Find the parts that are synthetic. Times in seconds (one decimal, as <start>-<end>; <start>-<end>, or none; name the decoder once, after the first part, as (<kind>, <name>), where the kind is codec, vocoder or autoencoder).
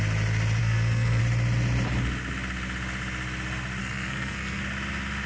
0.6-1.2 (codec, SNAC); 3.8-4.6